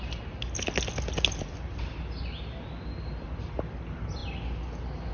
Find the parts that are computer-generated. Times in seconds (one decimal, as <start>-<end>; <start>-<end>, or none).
none